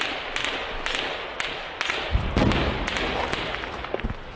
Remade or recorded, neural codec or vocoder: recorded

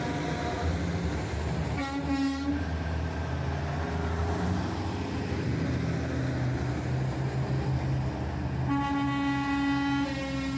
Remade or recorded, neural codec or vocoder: recorded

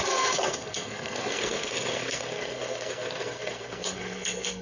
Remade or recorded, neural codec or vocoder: remade, codec, SNAC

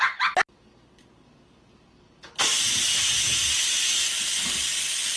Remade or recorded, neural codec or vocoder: recorded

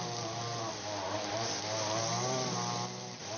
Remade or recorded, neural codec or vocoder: recorded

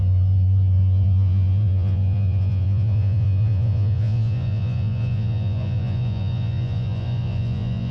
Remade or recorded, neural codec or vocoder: remade, vocoder, Vocos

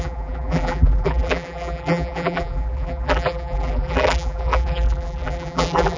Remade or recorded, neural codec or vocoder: remade, vocoder, BigVGAN v2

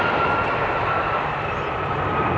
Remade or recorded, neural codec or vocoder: recorded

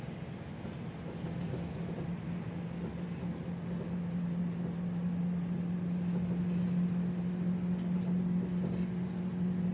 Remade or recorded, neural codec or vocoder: recorded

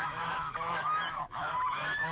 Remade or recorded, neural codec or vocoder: remade, autoencoder, DAC-VAE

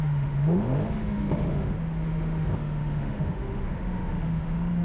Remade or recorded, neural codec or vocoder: remade, autoencoder, DAC-VAE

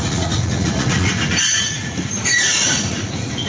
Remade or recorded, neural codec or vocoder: remade, vocoder, Vocos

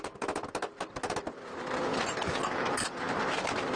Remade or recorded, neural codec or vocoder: recorded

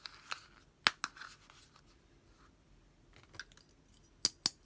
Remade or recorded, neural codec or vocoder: recorded